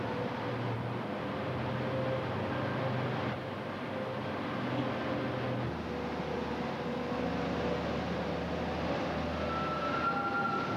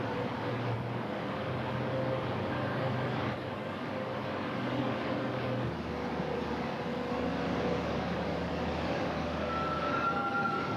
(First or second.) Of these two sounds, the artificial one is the second